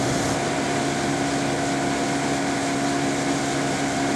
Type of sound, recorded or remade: recorded